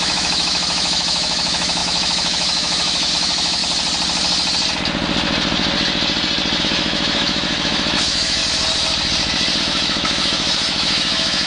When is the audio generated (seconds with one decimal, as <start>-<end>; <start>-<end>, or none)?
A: 0.0-3.6; 6.6-8.4; 9.6-11.5